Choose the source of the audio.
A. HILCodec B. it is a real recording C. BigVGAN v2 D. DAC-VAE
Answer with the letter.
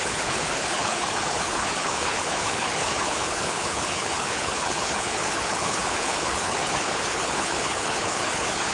A